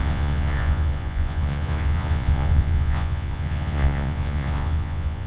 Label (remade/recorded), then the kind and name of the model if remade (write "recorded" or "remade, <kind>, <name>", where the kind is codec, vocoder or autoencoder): remade, vocoder, Vocos